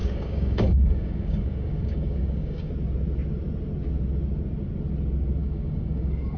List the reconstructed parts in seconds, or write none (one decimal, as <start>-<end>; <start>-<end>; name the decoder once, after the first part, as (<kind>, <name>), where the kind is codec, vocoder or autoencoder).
0.0-2.7 (codec, DAC); 5.4-6.4